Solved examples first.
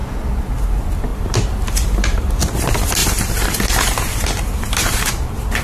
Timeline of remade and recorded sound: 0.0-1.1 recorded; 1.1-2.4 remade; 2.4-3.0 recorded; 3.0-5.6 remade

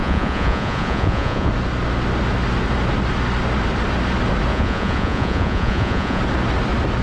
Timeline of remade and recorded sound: 0.0-1.5 remade; 1.5-4.5 recorded; 4.5-6.2 remade; 6.2-7.0 recorded

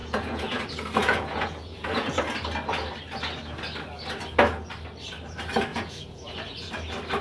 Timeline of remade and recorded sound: 0.0-0.6 remade; 0.6-1.0 recorded; 1.0-2.2 remade; 2.2-5.7 recorded; 5.7-6.7 remade; 6.7-7.2 recorded